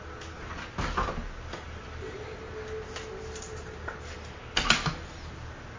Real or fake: real